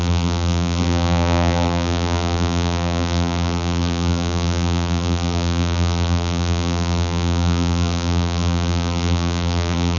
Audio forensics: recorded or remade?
remade